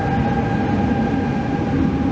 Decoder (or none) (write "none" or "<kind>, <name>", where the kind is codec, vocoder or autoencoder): none